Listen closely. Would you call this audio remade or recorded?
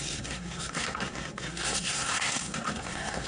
remade